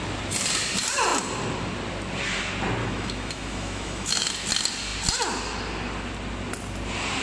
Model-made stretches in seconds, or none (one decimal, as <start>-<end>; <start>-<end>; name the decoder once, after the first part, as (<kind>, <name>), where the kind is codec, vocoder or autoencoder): 2.8-4.3 (autoencoder, DAC-VAE)